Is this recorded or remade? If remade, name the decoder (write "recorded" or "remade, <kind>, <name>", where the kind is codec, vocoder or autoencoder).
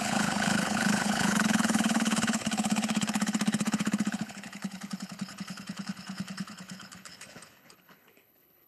remade, codec, HILCodec